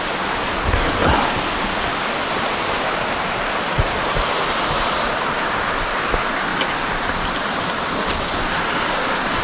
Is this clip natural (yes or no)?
yes